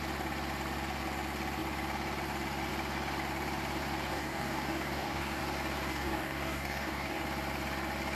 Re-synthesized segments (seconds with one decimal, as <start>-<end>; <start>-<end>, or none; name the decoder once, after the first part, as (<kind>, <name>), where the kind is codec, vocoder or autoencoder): 4.1-5.4 (codec, DAC); 5.9-7.2